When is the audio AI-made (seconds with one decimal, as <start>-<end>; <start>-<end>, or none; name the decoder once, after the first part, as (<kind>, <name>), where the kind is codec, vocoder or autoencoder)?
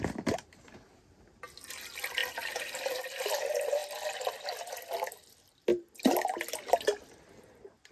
none